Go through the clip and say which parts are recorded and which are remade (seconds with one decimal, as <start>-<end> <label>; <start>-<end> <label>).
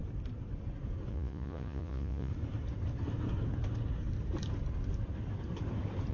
0.0-1.1 recorded; 1.1-2.3 remade; 2.3-6.1 recorded